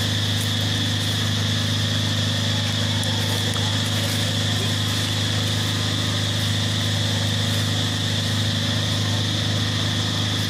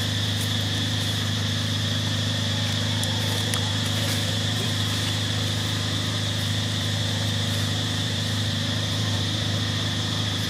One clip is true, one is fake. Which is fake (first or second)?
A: second